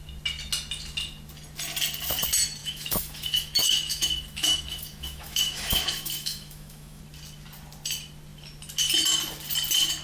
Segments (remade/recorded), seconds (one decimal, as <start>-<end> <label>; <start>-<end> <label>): 0.0-2.6 recorded; 2.6-7.0 remade; 7.0-10.0 recorded